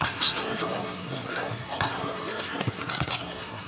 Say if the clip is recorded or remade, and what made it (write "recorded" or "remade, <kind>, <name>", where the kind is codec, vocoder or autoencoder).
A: remade, codec, SNAC